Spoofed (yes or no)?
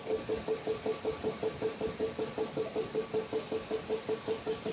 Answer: yes